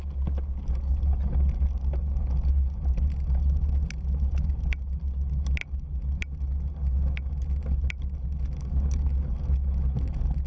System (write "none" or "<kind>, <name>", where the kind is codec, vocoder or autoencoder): none